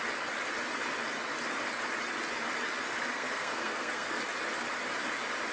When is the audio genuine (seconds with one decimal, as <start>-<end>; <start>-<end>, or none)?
0.0-3.1; 4.2-5.5